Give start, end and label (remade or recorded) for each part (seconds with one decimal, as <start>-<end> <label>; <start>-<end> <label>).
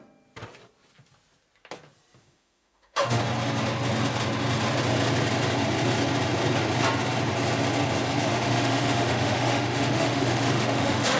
0.0-2.2 recorded; 2.2-3.2 remade; 3.2-8.3 recorded; 8.3-11.2 remade